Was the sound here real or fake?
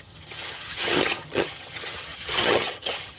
fake